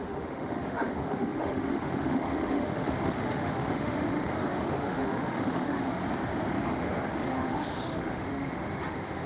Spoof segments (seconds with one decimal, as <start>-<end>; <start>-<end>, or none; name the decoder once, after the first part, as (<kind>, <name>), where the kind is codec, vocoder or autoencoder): 0.0-6.0 (autoencoder, DAC-VAE); 6.5-9.3